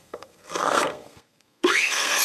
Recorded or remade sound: remade